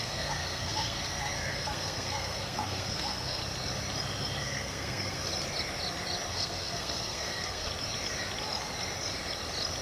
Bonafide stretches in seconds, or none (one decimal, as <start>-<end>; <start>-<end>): 3.4-4.4; 5.3-6.3; 7.7-9.8